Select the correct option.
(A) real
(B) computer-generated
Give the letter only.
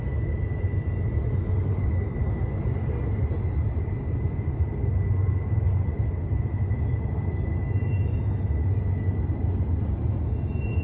A